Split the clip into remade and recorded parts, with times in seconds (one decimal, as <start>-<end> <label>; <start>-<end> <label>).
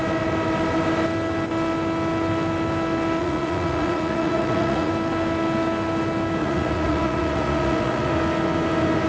0.0-3.2 recorded; 3.2-4.9 remade; 4.9-6.4 recorded; 6.4-8.1 remade; 8.1-9.1 recorded